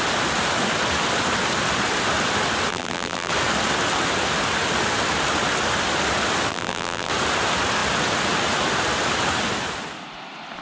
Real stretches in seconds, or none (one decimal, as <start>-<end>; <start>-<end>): 0.0-2.7; 3.3-6.5; 7.1-10.6